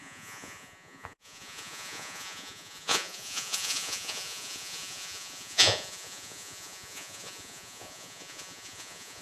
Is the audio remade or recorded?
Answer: remade